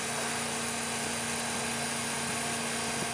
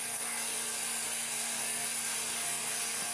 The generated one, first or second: second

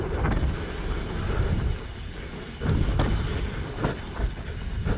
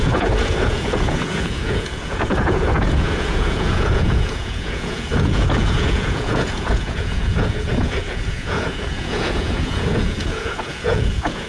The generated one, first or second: second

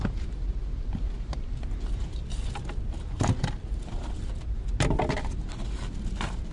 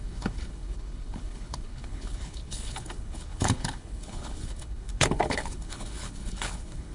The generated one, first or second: second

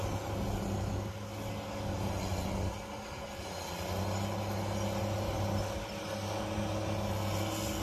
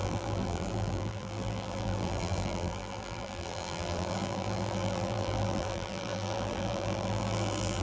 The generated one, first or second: second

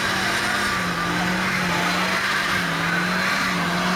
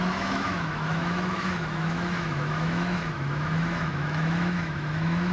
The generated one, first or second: second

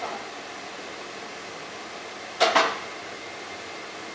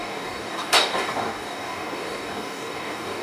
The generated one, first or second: second